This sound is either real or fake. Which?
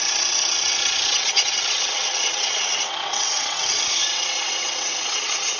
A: fake